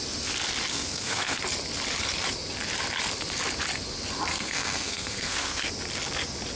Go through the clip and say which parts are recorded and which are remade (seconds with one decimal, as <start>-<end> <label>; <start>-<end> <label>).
0.0-0.7 recorded; 0.7-1.4 remade; 1.4-4.3 recorded; 4.3-5.7 remade; 5.7-6.6 recorded